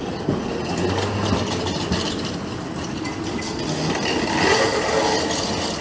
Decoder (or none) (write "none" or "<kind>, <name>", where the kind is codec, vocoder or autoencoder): none